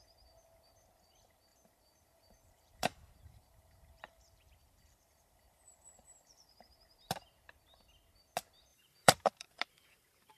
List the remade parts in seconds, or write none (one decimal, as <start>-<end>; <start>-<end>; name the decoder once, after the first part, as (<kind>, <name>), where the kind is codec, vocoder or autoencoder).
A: 1.5-6.6 (vocoder, BigVGAN v2); 8.7-9.5